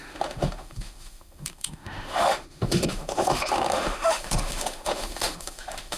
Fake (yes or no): yes